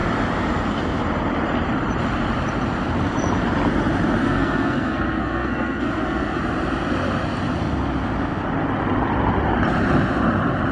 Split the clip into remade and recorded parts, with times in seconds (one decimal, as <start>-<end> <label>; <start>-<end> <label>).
0.0-4.2 recorded; 4.2-6.4 remade; 6.4-10.7 recorded